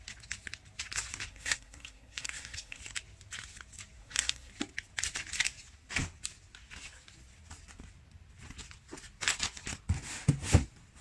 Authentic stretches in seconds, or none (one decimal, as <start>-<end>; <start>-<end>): 0.0-1.3; 2.8-4.0; 4.5-11.0